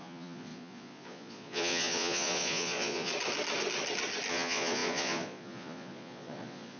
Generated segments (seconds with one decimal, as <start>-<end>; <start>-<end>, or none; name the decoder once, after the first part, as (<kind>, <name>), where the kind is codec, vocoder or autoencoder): 0.0-3.1 (vocoder, Vocos); 4.3-6.8